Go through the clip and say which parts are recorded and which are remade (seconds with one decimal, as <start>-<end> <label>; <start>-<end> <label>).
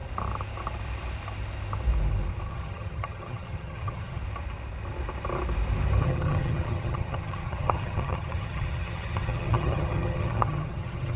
0.0-2.5 recorded; 2.5-4.2 remade; 4.2-6.0 recorded; 6.0-11.2 remade